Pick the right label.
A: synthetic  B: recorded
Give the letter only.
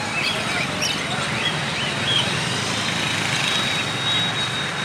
B